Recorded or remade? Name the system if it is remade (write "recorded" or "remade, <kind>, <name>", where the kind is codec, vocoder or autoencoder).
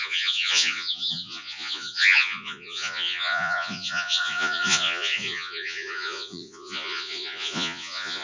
remade, vocoder, Vocos